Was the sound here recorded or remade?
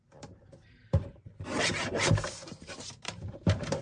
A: remade